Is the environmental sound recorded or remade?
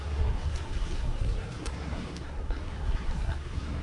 remade